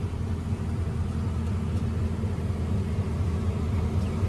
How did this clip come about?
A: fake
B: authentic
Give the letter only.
B